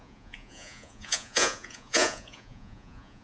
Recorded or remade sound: remade